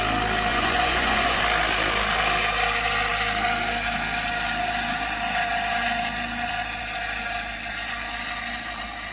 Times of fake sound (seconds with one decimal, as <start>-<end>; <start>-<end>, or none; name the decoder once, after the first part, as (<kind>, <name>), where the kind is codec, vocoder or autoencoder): 0.5-1.4 (vocoder, Vocos)